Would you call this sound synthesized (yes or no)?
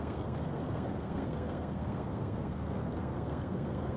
yes